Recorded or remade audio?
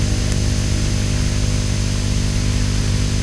recorded